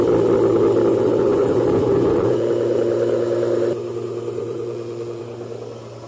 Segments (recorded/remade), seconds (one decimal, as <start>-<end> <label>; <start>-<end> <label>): 0.0-0.9 recorded; 0.9-2.5 remade; 2.5-4.4 recorded; 4.4-5.2 remade; 5.2-6.1 recorded